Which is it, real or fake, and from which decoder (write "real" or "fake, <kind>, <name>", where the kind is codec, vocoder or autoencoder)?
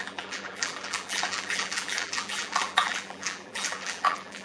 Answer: fake, vocoder, BigVGAN v2